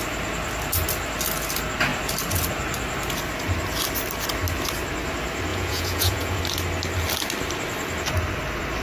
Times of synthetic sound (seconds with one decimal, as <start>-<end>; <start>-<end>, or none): 5.5-6.4